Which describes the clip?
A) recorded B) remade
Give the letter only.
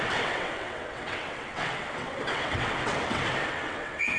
B